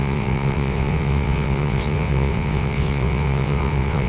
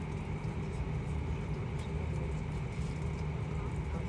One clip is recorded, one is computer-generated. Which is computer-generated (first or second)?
first